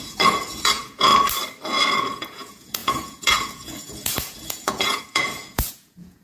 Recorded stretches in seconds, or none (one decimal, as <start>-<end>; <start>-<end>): 1.1-2.0